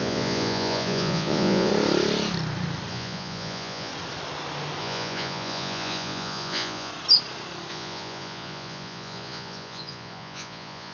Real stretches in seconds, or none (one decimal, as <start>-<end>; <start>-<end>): 1.7-2.9; 3.9-4.8; 6.9-7.7